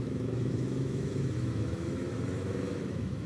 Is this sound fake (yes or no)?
yes